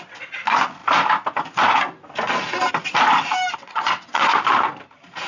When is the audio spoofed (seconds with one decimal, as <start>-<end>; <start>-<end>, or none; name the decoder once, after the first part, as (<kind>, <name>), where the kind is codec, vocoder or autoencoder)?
3.6-4.3 (vocoder, WaveNeXt)